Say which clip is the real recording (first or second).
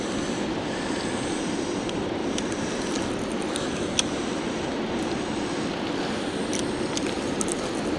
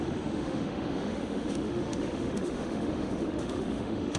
first